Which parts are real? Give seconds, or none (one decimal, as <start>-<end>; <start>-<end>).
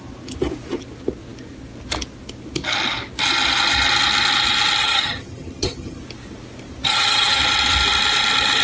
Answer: 0.0-4.8; 6.0-6.9; 7.4-8.6